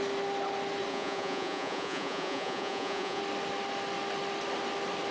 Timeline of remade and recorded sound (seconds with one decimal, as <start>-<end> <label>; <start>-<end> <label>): 0.0-0.9 recorded; 0.9-3.2 remade; 3.2-5.1 recorded